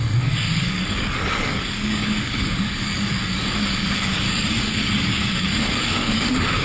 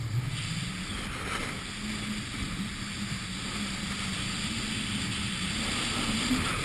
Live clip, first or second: second